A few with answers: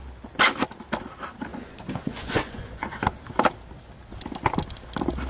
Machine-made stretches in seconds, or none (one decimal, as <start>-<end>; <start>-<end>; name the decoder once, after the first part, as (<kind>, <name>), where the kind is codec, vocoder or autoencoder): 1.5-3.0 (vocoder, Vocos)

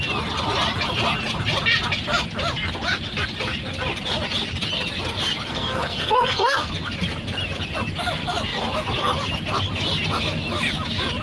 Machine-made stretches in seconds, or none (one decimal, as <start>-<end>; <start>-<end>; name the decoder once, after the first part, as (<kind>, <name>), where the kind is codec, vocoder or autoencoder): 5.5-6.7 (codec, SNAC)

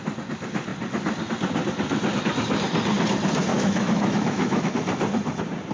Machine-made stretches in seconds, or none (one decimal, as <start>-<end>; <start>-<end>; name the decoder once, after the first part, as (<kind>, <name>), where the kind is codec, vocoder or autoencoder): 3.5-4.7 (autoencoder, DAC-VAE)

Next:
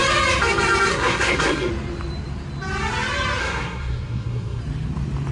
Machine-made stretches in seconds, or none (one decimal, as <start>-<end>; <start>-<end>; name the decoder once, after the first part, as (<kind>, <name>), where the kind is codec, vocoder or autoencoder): 0.9-1.7 (codec, SNAC); 3.4-4.6

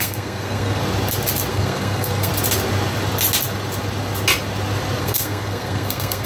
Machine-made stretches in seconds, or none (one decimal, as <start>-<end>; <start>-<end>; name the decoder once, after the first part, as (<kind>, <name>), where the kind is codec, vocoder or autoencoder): 0.0-0.8 (codec, SNAC); 1.5-2.3; 5.0-6.3

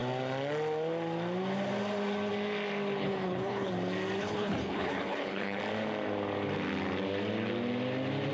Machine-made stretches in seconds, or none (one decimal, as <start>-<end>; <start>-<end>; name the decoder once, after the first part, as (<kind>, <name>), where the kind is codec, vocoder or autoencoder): 3.0-3.7 (codec, HILCodec); 4.2-5.6

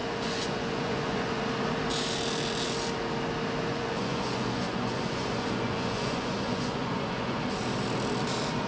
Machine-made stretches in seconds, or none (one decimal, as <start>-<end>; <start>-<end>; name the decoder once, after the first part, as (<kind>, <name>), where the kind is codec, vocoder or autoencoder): 0.0-1.4 (vocoder, Vocos); 3.7-7.4

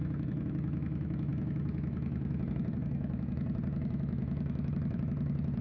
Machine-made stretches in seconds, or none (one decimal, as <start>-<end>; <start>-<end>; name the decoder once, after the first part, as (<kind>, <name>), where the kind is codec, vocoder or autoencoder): 0.0-5.6 (autoencoder, DAC-VAE)